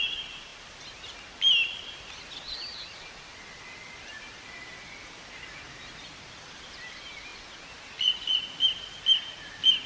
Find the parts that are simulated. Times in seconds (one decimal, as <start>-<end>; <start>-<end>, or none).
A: none